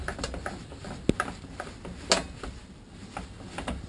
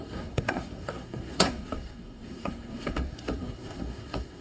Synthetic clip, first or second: second